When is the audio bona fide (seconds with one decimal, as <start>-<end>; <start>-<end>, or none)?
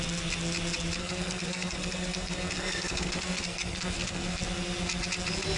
0.0-1.0; 4.4-5.6